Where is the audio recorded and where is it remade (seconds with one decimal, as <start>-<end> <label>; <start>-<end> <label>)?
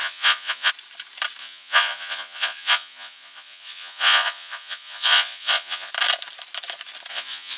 0.0-0.7 remade; 0.7-1.4 recorded; 1.4-5.9 remade; 5.9-7.1 recorded; 7.1-7.6 remade